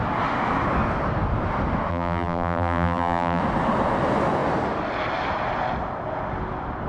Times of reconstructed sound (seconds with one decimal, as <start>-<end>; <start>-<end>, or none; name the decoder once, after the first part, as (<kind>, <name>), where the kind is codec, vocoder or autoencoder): 1.9-3.4 (vocoder, BigVGAN v2)